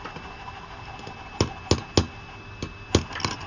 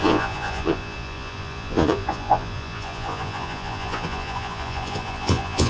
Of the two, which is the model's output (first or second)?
second